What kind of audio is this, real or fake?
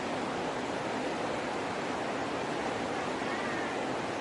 real